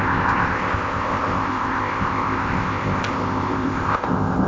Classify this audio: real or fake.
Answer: fake